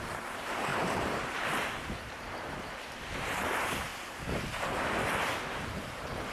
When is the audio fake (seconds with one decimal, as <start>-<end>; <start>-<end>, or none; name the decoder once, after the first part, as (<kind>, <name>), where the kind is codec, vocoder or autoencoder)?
0.0-3.9 (vocoder, BigVGAN v2); 5.5-6.3